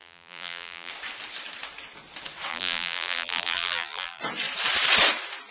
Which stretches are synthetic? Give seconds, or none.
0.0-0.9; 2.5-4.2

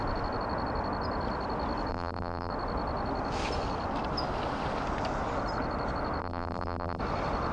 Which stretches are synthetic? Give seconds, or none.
1.9-2.5; 6.2-7.0

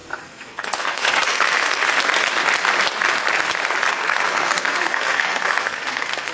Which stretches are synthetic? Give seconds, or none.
0.0-1.8; 3.9-6.3